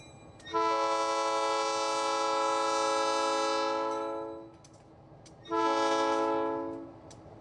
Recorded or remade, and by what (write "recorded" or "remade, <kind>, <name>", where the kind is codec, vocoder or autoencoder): recorded